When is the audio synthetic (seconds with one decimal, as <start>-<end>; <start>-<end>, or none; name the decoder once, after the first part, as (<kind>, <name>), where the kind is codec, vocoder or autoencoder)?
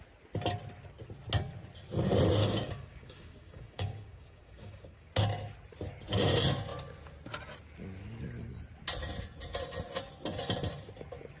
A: 2.4-5.1 (codec, DAC)